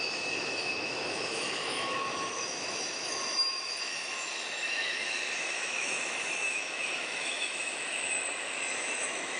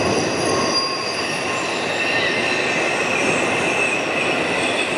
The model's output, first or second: first